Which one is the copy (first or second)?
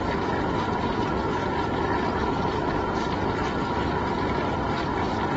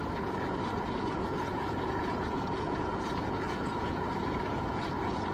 second